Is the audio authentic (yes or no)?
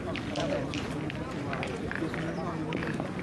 yes